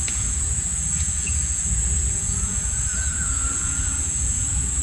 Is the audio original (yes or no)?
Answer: no